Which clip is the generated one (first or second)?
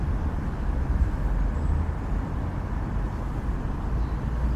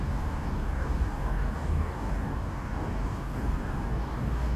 second